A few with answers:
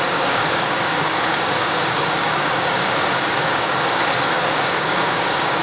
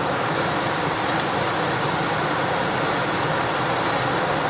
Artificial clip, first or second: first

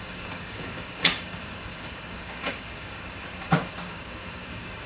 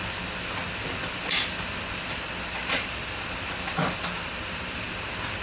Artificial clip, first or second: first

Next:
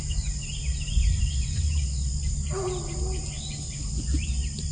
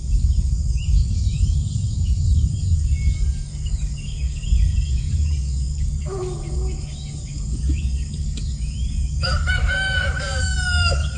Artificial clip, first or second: second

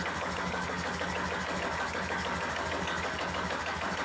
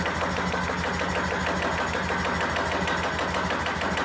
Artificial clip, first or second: first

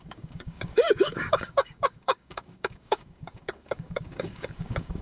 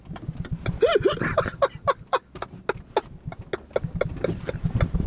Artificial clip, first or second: first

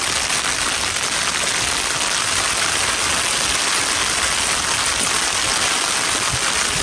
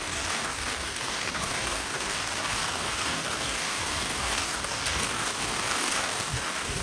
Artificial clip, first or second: second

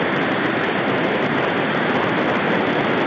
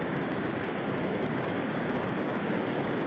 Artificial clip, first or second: second